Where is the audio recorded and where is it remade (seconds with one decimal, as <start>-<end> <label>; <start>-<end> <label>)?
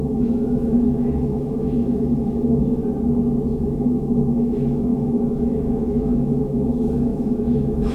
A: 0.0-2.8 remade; 2.8-3.5 recorded; 3.5-7.9 remade